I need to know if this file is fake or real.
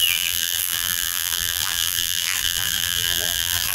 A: fake